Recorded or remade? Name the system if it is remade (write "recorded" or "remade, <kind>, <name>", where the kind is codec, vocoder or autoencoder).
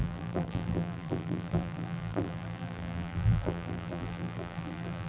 remade, vocoder, BigVGAN v2